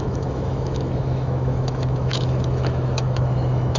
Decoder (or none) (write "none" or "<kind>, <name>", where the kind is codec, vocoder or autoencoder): autoencoder, DAC-VAE